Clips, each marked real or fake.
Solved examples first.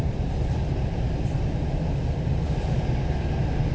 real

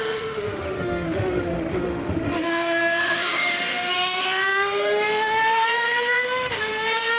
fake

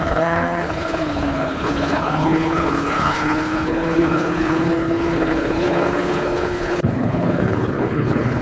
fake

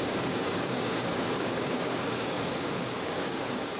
fake